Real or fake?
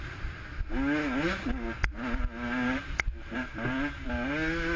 real